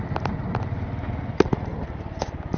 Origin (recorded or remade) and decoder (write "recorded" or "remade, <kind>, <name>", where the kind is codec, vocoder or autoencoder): recorded